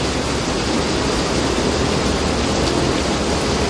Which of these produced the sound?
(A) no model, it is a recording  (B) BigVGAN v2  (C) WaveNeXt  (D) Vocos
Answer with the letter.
A